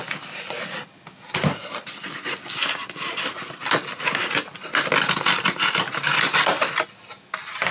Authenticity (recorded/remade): recorded